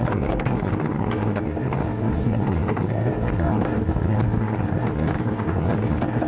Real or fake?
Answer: fake